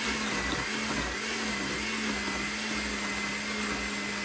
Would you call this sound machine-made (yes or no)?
no